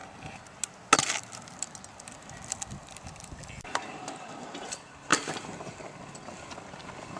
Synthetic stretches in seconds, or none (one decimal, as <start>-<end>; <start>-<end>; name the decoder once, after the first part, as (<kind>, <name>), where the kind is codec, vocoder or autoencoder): 1.9-7.2 (vocoder, BigVGAN v2)